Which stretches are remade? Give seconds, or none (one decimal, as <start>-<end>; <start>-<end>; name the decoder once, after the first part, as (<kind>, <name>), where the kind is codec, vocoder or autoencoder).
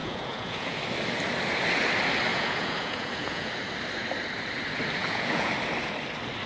0.0-0.8 (vocoder, Vocos); 2.3-3.5; 5.0-5.5